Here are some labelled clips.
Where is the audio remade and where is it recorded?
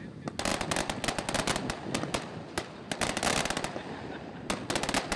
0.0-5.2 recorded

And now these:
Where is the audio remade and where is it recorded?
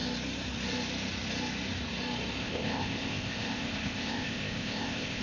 0.0-2.4 recorded; 2.4-5.2 remade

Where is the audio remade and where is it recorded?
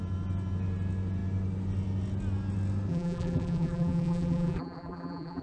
0.0-2.9 recorded; 2.9-5.4 remade